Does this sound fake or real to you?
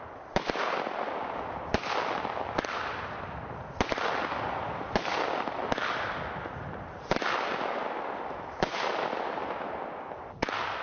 real